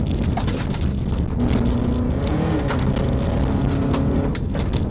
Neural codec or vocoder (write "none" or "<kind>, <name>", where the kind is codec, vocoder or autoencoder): none